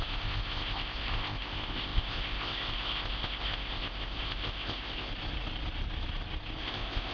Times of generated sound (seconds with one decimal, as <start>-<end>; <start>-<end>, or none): 0.0-5.1; 6.6-7.1